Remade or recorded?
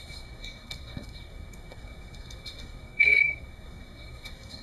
remade